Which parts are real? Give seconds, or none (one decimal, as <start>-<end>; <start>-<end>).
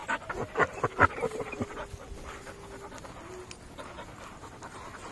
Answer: 0.0-5.1